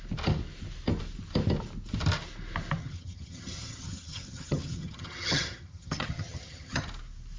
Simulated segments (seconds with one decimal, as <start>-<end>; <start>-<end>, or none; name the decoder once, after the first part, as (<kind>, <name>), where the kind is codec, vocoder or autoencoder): 2.8-6.8 (vocoder, HiFi-GAN)